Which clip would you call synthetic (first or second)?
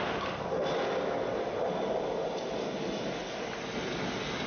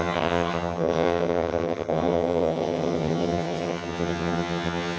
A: second